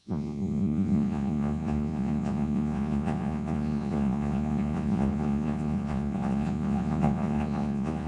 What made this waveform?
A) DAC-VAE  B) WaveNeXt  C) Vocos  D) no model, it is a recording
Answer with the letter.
C